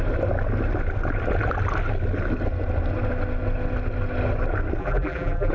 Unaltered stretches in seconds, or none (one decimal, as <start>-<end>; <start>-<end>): 0.0-4.8